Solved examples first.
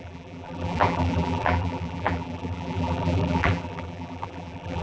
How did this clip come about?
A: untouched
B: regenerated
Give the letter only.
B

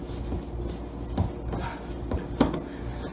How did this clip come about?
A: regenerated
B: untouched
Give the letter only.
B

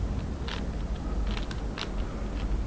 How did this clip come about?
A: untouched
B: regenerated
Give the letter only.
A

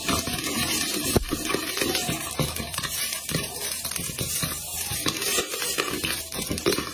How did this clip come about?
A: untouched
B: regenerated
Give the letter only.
B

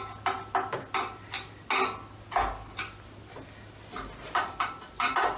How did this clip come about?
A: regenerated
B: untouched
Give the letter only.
B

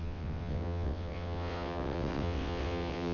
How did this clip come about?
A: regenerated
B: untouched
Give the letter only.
A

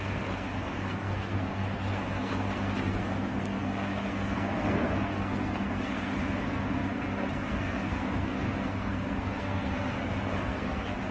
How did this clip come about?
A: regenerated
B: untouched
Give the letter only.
A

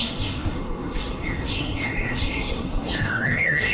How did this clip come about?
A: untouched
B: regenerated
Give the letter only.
B